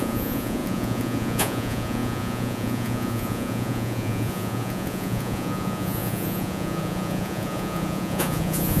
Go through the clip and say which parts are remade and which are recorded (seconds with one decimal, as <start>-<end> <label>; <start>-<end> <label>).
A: 0.0-8.8 remade